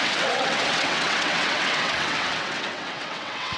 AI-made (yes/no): yes